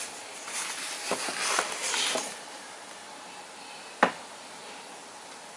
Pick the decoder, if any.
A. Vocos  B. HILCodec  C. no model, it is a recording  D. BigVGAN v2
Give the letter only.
C